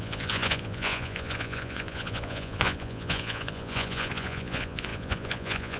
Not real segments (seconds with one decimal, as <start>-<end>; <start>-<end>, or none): 0.0-5.8